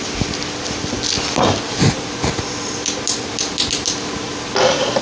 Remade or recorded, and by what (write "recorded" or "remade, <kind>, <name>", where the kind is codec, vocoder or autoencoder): recorded